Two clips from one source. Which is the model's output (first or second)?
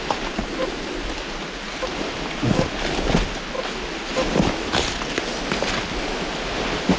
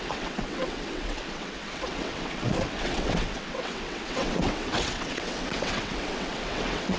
second